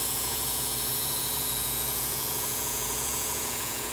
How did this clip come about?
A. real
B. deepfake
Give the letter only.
B